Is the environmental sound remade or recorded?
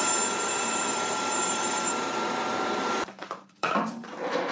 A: remade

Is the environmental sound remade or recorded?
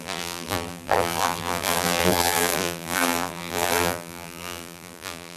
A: remade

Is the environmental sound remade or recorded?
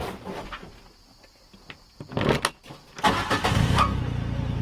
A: recorded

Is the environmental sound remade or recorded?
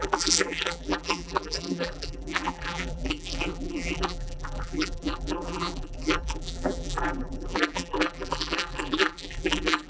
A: remade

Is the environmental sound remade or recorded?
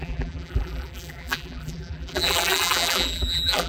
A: remade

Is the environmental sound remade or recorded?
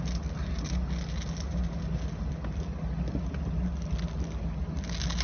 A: recorded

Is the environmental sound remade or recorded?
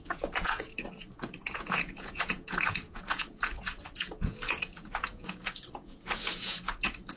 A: remade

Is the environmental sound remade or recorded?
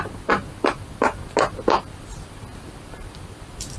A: recorded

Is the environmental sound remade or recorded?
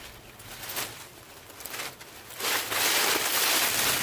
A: recorded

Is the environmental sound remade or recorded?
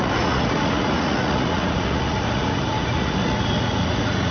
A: remade